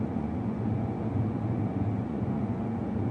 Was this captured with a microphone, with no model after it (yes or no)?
no